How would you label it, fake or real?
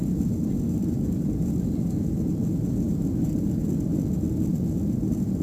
real